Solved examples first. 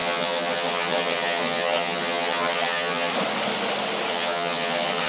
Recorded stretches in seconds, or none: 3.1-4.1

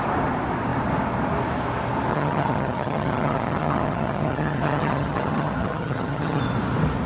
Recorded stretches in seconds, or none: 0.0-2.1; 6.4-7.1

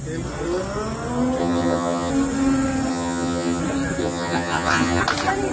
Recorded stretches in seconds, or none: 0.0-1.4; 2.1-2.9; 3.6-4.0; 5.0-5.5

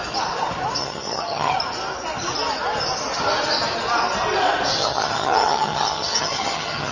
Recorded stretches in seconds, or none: 0.0-0.8; 1.5-4.8